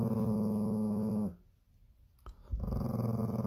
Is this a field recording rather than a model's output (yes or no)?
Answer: yes